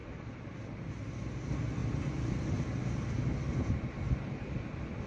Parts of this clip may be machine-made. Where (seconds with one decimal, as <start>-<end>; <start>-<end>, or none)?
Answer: none